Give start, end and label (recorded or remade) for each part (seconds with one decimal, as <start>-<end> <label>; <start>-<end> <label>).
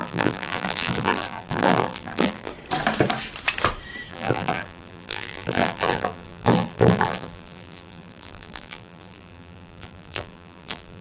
0.0-2.5 remade; 2.5-4.1 recorded; 4.1-11.0 remade